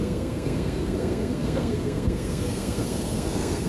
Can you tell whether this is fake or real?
fake